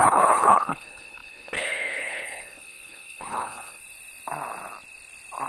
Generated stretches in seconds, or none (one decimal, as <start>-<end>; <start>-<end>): 0.0-3.8